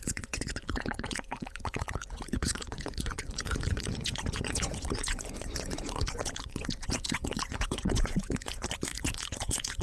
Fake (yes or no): yes